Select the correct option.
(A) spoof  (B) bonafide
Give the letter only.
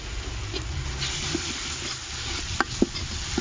B